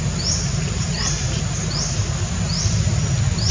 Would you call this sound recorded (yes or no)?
yes